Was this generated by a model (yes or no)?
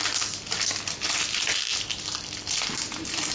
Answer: no